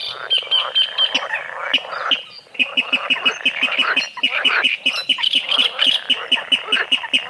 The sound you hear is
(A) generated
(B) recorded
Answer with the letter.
B